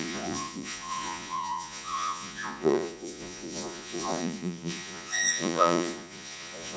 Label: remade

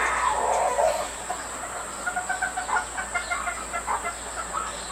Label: recorded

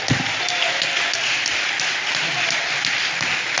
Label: recorded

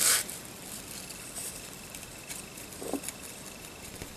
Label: recorded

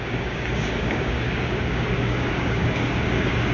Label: remade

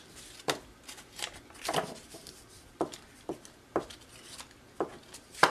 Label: recorded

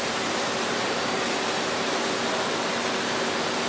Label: recorded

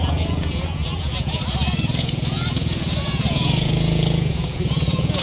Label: remade